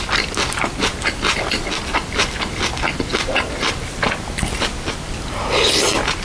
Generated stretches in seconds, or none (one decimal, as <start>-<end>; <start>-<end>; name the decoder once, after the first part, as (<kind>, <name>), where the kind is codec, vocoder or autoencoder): 0.9-1.7 (vocoder, BigVGAN v2)